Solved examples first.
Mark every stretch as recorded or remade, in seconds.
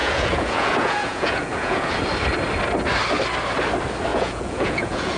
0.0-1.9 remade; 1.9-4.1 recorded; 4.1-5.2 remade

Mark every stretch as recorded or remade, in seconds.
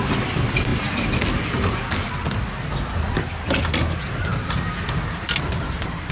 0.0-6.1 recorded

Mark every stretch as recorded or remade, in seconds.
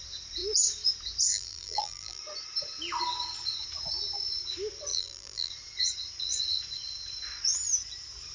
0.0-1.3 recorded; 1.3-2.2 remade; 2.2-4.9 recorded; 4.9-5.5 remade; 5.5-8.3 recorded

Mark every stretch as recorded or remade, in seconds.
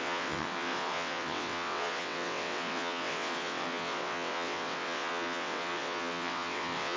0.0-7.0 remade